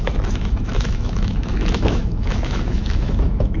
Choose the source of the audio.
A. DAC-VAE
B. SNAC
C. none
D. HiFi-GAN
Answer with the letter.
A